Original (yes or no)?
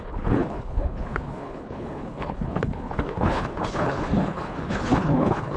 no